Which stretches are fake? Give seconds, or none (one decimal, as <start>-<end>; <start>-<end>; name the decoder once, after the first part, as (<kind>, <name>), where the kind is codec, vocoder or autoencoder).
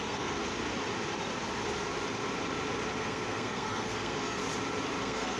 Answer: 0.0-0.4 (codec, SNAC); 3.0-4.4; 5.0-5.4